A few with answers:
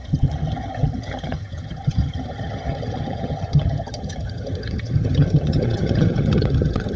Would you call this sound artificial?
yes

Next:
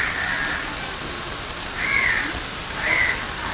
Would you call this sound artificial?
no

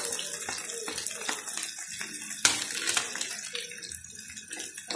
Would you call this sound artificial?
no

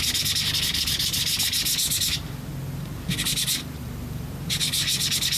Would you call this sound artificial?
no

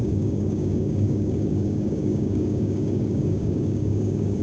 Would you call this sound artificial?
yes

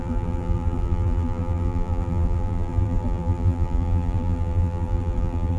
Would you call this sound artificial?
yes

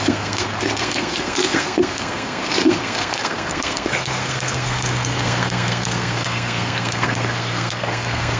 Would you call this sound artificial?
yes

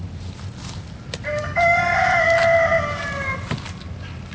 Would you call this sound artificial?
no